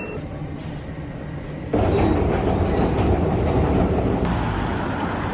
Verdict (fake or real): real